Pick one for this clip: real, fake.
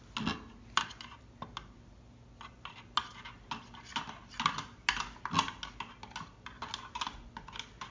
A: real